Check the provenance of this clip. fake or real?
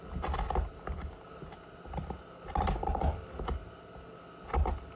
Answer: real